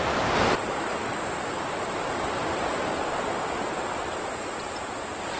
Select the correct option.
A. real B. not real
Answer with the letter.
B